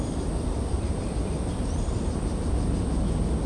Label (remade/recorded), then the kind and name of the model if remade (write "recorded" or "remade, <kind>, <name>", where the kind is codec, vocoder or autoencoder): recorded